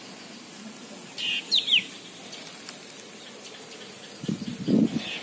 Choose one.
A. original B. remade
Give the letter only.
A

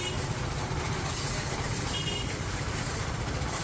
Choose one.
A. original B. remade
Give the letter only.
B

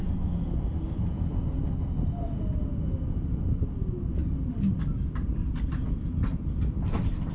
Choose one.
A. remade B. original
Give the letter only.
B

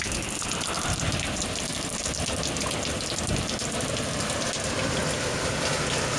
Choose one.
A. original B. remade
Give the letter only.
A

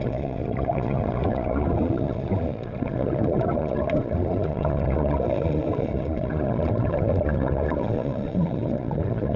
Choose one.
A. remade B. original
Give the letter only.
A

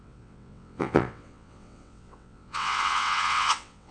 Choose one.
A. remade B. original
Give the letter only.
A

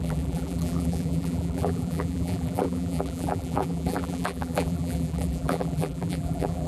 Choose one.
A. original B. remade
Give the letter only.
B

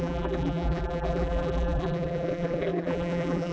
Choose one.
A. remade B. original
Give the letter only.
A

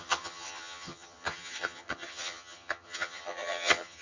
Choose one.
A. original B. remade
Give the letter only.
B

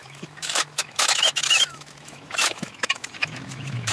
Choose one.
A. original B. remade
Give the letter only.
B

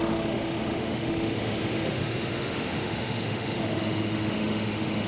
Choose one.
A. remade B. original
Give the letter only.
A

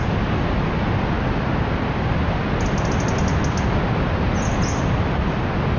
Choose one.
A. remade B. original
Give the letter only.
B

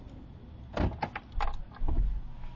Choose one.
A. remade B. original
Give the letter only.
B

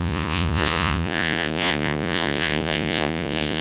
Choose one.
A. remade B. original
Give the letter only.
A